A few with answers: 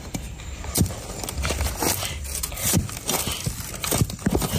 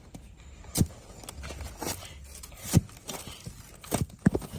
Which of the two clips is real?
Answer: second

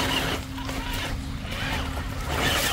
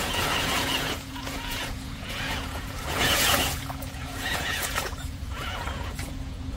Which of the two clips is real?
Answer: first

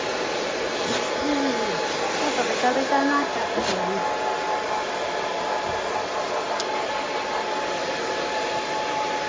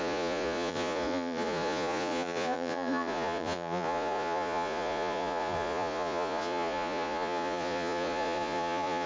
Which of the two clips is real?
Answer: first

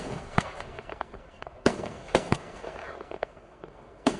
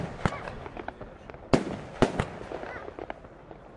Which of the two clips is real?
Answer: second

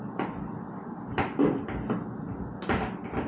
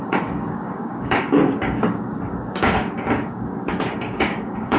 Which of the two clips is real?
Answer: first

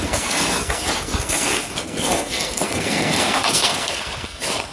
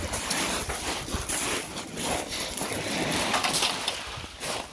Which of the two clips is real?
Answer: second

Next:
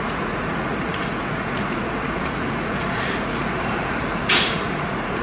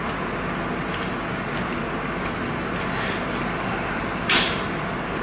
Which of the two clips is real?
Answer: second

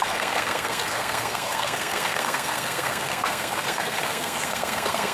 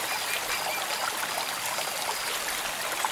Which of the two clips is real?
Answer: second